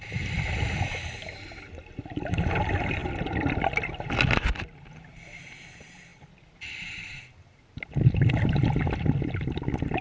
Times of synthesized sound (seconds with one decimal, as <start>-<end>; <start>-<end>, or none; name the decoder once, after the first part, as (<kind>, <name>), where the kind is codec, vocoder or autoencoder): 6.1-7.2 (vocoder, BigVGAN v2)